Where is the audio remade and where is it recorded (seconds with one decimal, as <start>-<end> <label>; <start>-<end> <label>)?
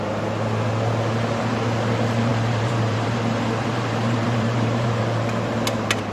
0.0-2.3 recorded; 2.3-5.0 remade; 5.0-6.1 recorded